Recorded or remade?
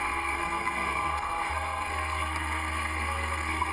remade